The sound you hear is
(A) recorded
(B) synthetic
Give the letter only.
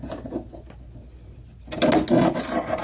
A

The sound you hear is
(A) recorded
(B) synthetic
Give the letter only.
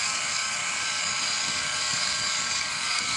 B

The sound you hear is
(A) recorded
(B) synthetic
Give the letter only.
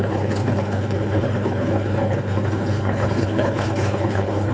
B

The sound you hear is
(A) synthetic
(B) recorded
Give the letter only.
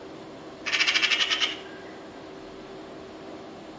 B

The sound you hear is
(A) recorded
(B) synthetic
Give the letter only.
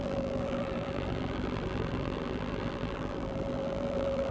B